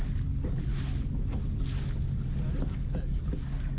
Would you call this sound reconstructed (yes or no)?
no